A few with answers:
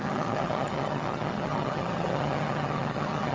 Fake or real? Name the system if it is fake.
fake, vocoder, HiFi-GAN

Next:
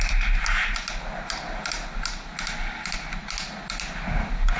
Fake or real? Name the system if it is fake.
real